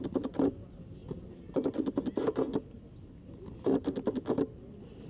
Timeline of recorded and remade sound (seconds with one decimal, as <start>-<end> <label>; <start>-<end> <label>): 0.0-5.1 recorded